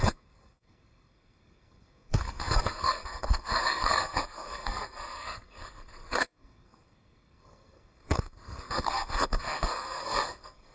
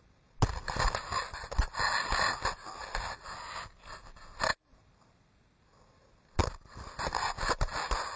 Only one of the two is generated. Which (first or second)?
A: first